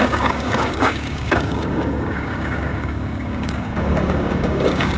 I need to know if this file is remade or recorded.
remade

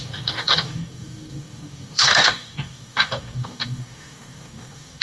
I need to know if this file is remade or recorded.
remade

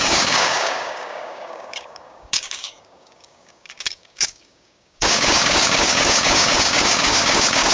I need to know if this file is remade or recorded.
remade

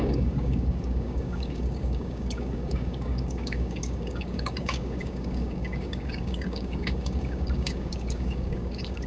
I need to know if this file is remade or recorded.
remade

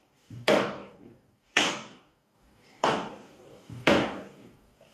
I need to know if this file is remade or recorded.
remade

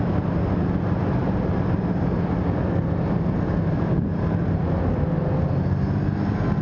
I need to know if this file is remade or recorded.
recorded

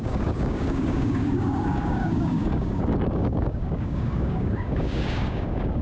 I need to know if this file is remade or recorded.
remade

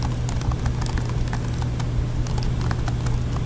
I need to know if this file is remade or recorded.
recorded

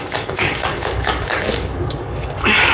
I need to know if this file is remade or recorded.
remade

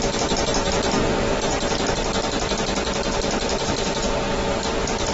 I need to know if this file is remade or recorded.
recorded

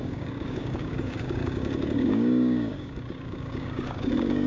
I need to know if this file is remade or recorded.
remade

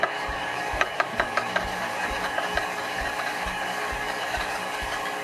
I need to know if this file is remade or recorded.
remade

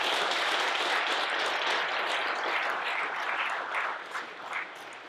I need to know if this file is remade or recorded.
recorded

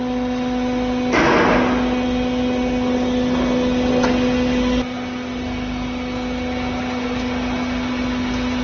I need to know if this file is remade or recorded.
recorded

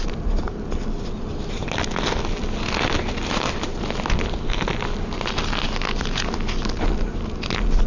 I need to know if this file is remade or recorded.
recorded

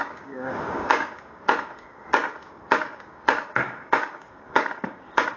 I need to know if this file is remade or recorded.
remade